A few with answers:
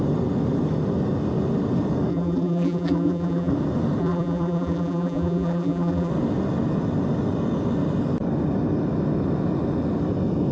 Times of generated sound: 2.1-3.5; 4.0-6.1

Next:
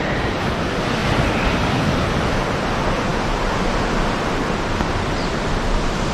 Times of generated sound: 0.0-1.0; 1.9-3.1; 4.3-6.1

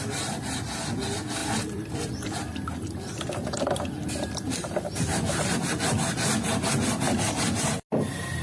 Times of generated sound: 1.4-5.8

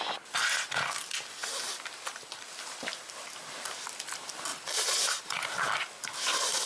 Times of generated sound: 4.5-5.4

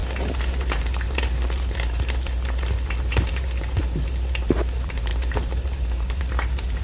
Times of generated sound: 0.0-6.8